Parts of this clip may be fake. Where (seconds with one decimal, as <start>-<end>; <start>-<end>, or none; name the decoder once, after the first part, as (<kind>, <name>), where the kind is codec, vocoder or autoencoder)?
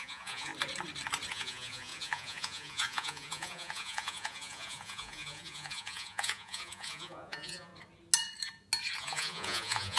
0.0-0.5 (vocoder, Vocos); 1.3-7.7; 9.0-10.0